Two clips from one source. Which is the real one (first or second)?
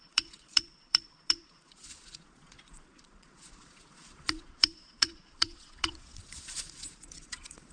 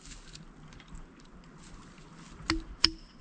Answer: second